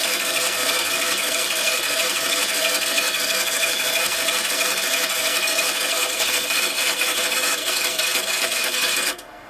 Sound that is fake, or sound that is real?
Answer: fake